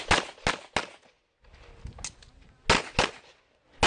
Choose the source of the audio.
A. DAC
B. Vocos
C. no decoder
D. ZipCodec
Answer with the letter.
C